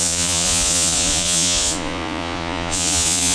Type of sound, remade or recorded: remade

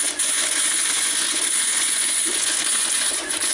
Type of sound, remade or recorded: remade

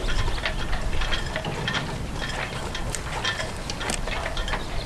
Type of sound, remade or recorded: recorded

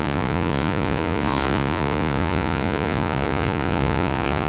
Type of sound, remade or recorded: remade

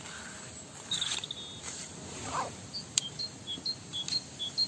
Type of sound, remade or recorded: recorded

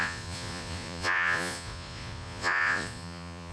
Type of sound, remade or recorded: remade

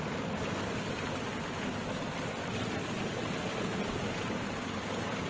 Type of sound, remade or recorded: recorded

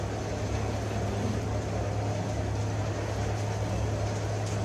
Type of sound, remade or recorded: recorded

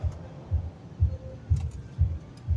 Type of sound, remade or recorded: recorded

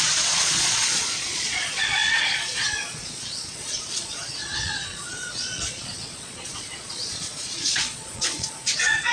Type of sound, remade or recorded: remade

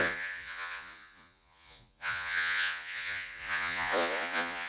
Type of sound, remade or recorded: remade